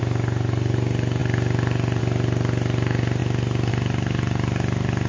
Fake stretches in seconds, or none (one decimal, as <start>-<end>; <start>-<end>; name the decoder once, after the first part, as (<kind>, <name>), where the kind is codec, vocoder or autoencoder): none